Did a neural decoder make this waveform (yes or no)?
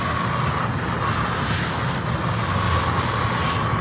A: no